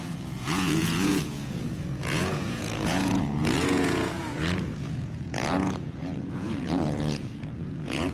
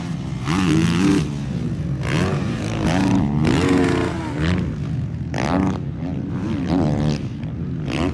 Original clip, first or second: second